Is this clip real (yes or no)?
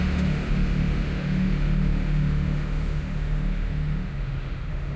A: no